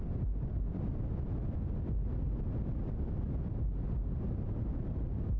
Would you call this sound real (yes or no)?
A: yes